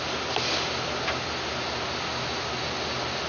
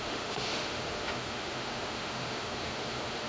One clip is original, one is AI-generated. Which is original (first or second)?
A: first